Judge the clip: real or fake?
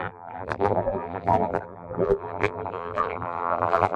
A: fake